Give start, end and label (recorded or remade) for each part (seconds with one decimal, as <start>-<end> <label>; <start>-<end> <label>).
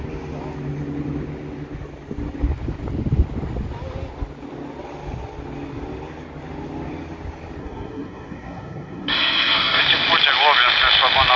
0.0-7.6 recorded; 7.6-9.8 remade; 9.8-11.4 recorded